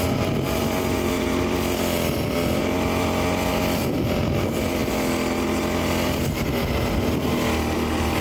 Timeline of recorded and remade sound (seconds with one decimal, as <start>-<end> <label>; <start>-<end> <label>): 0.0-8.2 recorded

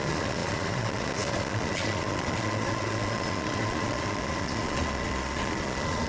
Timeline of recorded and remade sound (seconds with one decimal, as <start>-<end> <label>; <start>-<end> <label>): 0.0-6.1 remade

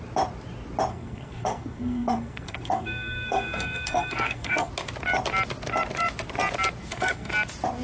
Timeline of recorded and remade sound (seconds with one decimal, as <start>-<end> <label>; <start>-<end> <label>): 0.0-0.9 recorded; 0.9-4.7 remade; 4.7-6.8 recorded; 6.8-7.3 remade; 7.3-7.8 recorded

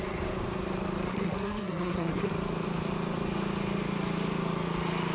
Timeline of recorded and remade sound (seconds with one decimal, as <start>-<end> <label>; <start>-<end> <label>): 0.0-1.1 recorded; 1.1-2.3 remade; 2.3-5.1 recorded

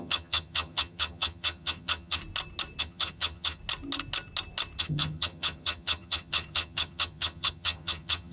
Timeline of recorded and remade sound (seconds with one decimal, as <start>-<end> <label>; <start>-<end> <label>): 0.0-2.2 remade; 2.2-2.8 recorded; 2.8-3.6 remade; 3.6-4.8 recorded; 4.8-8.3 remade

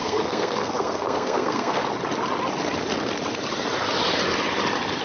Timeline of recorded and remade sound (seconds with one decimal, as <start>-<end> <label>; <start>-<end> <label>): 0.0-1.8 remade; 1.8-5.0 recorded